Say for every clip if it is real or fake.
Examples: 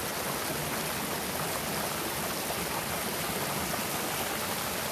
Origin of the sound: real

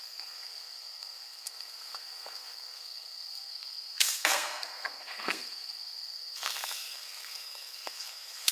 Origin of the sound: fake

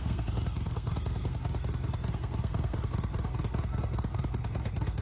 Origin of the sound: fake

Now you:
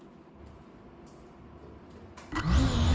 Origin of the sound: real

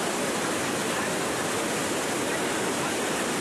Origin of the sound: real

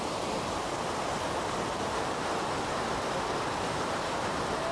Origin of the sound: real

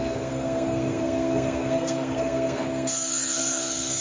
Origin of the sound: fake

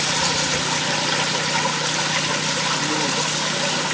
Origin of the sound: real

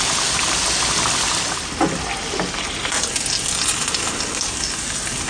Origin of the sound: real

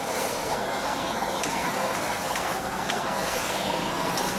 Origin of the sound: fake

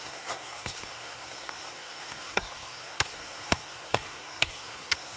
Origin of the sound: fake